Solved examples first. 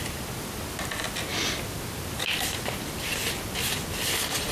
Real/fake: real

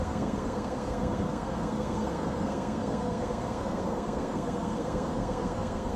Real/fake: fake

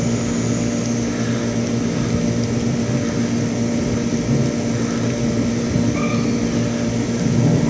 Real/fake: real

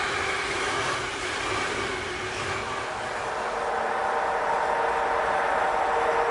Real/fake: real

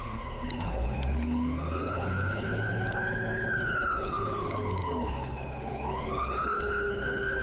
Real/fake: fake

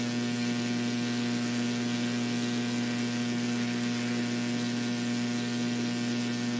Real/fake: real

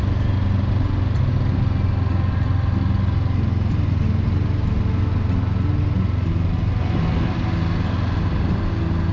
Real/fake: real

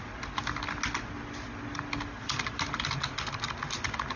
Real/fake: real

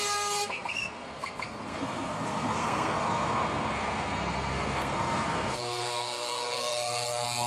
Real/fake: fake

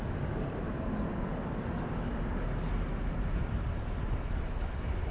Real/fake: real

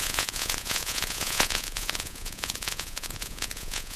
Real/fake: fake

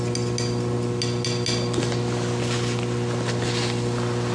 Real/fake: real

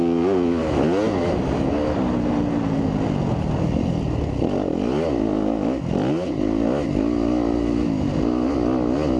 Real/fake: real